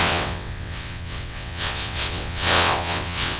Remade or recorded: remade